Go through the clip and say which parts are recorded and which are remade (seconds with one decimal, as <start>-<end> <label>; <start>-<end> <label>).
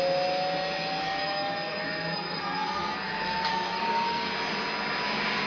0.0-1.0 recorded; 1.0-4.3 remade; 4.3-5.5 recorded